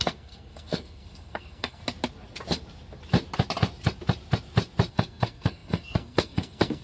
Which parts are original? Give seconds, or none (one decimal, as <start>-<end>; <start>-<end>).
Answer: 1.8-4.9